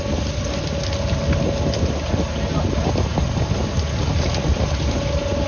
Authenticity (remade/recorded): recorded